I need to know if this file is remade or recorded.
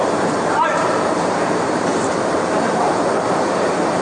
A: remade